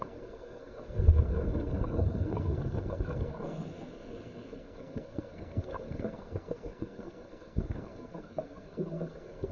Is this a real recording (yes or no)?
no